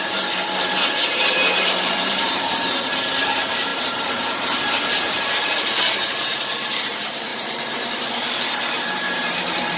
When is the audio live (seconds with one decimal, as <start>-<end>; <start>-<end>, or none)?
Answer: none